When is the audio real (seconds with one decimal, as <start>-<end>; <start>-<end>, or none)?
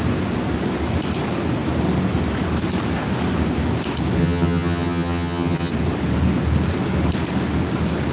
0.0-4.2; 5.7-8.1